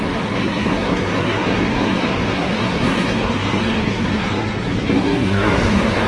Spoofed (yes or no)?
yes